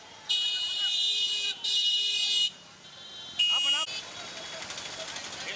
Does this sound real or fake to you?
real